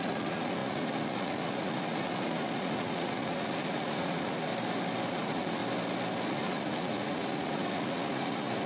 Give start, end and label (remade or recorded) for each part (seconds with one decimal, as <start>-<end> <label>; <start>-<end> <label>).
0.0-4.5 remade; 4.5-5.1 recorded; 5.1-5.6 remade; 5.6-6.3 recorded; 6.3-8.7 remade